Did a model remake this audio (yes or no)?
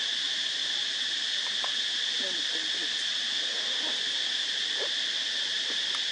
no